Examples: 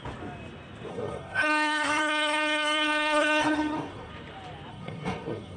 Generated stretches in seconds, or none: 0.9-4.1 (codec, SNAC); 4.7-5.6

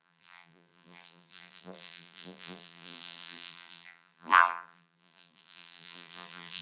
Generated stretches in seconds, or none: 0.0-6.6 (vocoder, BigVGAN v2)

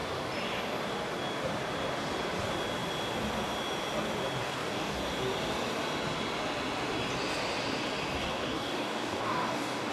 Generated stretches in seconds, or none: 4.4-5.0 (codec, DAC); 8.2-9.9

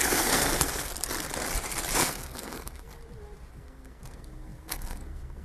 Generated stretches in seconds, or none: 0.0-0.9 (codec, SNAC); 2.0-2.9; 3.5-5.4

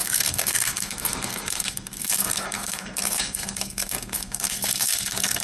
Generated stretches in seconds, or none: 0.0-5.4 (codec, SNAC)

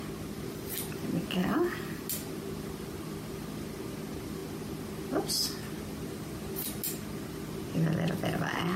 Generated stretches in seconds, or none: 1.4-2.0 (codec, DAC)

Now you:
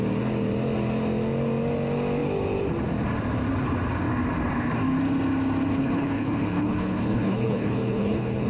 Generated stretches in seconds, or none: 5.7-8.5 (codec, HILCodec)